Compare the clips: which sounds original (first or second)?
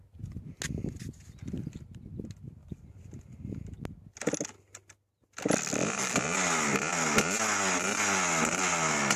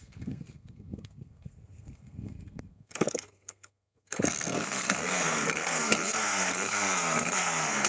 first